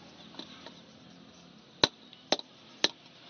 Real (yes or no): yes